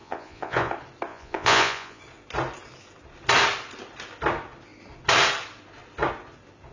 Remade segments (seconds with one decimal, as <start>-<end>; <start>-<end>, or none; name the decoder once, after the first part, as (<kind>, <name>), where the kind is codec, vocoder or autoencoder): 0.0-0.7 (vocoder, Vocos); 1.1-2.0